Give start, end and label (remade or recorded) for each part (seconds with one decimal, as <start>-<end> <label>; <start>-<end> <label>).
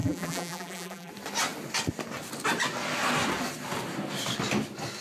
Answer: 0.0-1.1 remade; 1.1-5.0 recorded